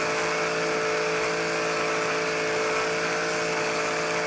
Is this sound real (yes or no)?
yes